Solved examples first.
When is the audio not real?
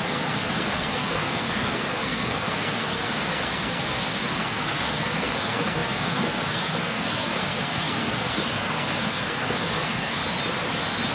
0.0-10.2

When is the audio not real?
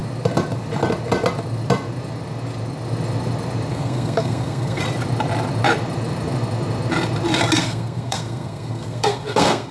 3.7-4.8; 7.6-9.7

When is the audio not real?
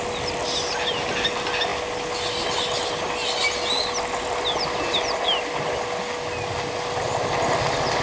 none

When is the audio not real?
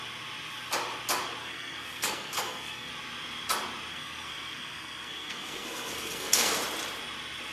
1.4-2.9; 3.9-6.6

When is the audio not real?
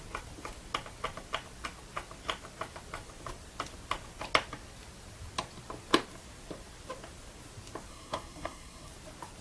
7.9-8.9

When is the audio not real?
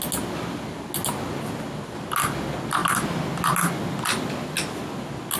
none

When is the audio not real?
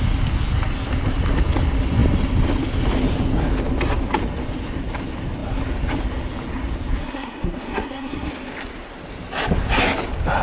7.0-8.3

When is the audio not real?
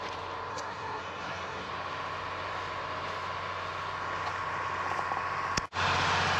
0.5-1.7